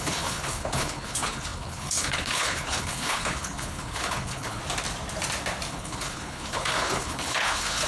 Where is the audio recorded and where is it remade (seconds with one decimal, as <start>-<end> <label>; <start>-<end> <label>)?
0.0-4.6 remade; 4.6-5.7 recorded; 5.7-7.9 remade